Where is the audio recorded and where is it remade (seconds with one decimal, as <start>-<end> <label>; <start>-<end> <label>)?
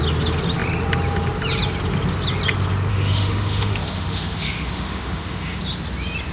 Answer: 0.0-2.9 recorded; 2.9-5.6 remade; 5.6-6.3 recorded